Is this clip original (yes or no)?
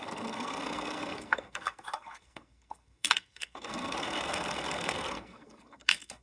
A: no